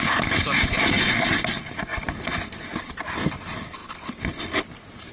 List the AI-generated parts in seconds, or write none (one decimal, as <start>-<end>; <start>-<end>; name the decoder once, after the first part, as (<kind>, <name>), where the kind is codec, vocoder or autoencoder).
none